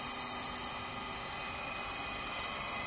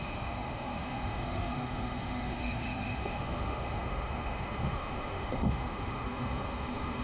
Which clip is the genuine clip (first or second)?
first